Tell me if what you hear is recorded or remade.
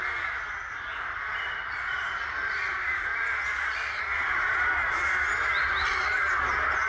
recorded